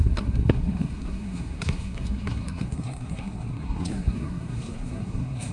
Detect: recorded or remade remade